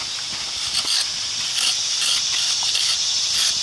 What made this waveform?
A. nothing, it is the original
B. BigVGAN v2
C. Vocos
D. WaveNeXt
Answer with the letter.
A